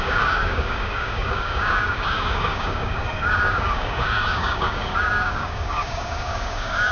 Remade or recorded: remade